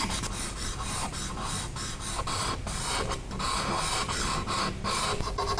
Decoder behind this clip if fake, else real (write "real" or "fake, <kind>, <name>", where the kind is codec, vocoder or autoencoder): real